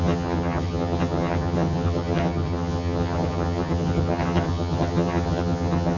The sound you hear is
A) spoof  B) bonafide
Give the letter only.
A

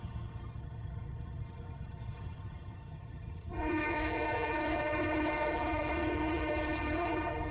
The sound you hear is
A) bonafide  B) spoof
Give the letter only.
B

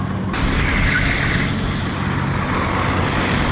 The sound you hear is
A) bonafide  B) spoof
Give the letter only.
A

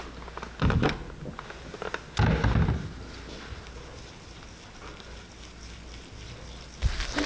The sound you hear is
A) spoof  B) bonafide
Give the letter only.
B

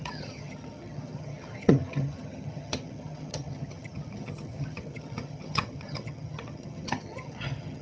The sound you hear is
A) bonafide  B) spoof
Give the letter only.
B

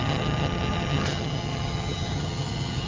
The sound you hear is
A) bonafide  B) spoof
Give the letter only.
B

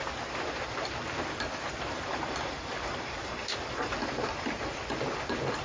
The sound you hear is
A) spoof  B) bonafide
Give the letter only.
B